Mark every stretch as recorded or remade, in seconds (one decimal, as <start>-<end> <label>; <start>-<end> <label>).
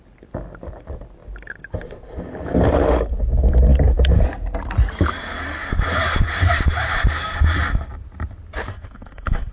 0.0-8.7 recorded; 8.7-9.5 remade